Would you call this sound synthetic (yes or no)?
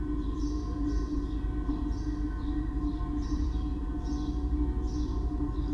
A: no